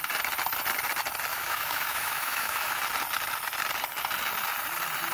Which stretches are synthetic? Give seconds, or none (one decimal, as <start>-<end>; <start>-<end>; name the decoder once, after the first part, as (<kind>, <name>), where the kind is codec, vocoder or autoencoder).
1.3-2.8 (autoencoder, DAC-VAE)